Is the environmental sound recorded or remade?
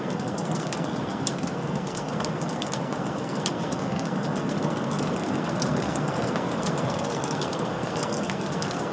remade